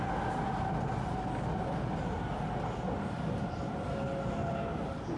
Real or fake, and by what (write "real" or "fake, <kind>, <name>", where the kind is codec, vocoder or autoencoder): real